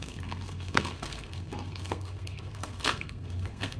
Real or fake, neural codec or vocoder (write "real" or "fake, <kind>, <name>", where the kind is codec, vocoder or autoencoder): fake, codec, SNAC